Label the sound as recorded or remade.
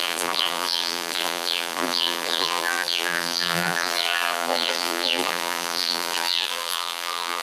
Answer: remade